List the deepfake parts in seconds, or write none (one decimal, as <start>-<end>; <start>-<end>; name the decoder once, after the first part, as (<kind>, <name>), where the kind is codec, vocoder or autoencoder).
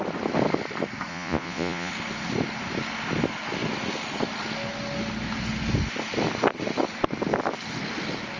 1.1-1.9 (vocoder, Vocos)